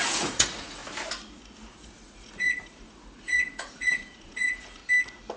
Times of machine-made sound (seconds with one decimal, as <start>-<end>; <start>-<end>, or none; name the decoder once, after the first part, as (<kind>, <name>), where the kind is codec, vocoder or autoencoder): 0.0-0.8 (vocoder, Vocos); 1.7-4.8